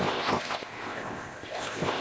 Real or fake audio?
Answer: fake